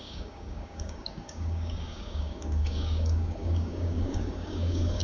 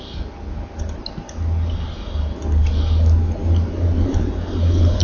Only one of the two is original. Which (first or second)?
second